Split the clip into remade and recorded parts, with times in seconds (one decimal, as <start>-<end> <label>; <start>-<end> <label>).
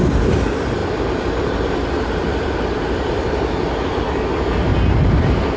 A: 0.0-0.8 recorded; 0.8-4.2 remade; 4.2-5.6 recorded